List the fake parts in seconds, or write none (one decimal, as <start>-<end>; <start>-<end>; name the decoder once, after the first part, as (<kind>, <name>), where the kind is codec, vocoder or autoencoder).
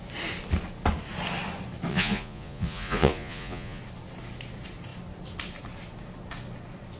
1.9-3.8 (vocoder, Vocos)